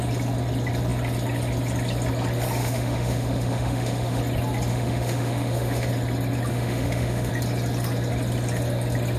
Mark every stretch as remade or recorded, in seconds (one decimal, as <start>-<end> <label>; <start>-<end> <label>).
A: 0.0-2.6 recorded; 2.6-4.2 remade; 4.2-4.7 recorded; 4.7-5.9 remade; 5.9-6.5 recorded; 6.5-7.3 remade; 7.3-9.2 recorded